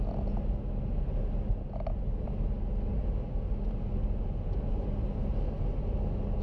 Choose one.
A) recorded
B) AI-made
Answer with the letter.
A